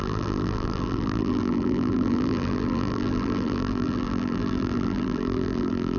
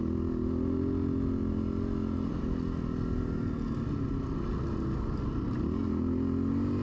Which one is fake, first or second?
first